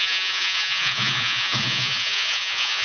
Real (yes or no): no